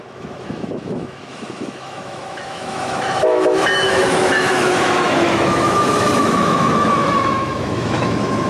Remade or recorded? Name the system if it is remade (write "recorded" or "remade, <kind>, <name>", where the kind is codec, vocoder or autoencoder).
remade, autoencoder, DAC-VAE